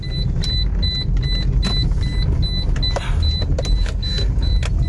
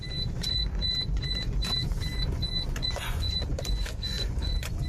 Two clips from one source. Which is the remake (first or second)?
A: second